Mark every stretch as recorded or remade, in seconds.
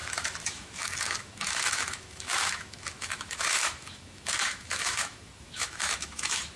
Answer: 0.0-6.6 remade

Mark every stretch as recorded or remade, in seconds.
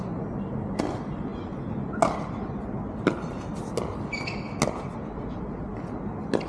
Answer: 0.0-6.5 recorded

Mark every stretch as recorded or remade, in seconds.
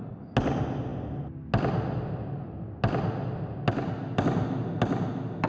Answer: 0.0-5.5 recorded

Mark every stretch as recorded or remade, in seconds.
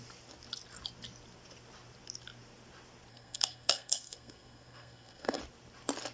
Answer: 0.0-3.1 recorded; 3.1-5.4 remade; 5.4-6.1 recorded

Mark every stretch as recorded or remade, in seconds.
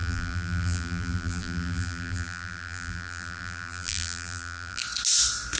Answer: 0.0-4.8 remade; 4.8-5.6 recorded